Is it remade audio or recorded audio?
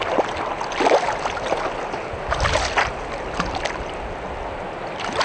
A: recorded